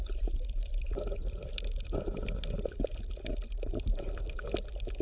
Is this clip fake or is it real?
real